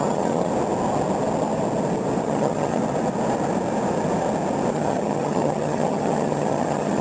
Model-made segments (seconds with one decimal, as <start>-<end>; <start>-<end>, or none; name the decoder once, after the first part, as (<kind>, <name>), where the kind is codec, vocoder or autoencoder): 0.0-0.5 (vocoder, HiFi-GAN); 2.2-2.8; 4.7-7.0